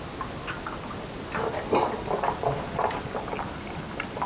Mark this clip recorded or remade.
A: recorded